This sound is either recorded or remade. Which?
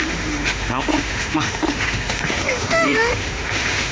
remade